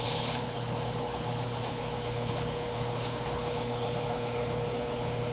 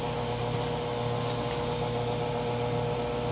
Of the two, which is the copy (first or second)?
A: first